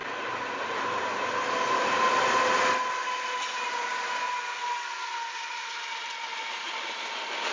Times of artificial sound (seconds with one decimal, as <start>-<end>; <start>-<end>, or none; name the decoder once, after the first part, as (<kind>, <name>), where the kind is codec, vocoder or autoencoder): none